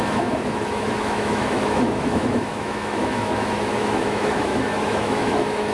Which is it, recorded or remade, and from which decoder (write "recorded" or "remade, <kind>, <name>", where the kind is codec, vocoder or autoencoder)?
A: remade, autoencoder, DAC-VAE